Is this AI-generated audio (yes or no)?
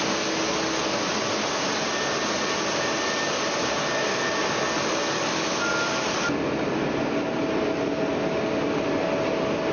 no